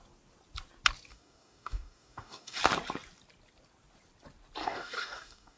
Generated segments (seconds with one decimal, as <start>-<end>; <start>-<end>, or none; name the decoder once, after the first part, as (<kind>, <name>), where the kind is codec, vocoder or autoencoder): 1.1-2.6 (codec, DAC); 4.6-5.6